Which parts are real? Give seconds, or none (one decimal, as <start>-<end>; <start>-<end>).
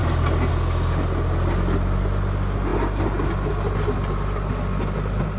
0.0-5.4